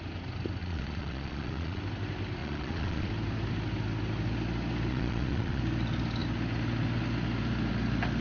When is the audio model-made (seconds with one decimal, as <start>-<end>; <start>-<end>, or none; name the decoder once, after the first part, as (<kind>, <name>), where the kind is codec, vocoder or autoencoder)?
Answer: 0.6-1.8 (vocoder, Vocos); 2.4-3.1; 4.9-5.6